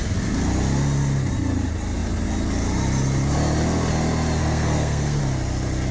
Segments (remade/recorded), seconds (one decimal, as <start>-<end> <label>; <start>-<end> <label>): 0.0-4.4 recorded; 4.4-5.2 remade; 5.2-5.9 recorded